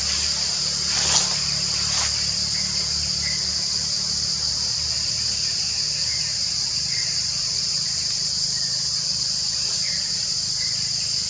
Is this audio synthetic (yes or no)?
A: no